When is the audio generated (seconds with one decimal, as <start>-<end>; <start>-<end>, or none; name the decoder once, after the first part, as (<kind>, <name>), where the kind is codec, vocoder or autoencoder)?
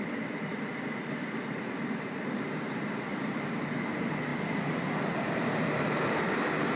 0.0-0.7 (vocoder, BigVGAN v2); 3.1-3.8; 4.3-6.3